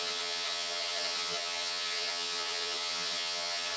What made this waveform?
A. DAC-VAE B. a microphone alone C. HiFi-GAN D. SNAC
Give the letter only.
C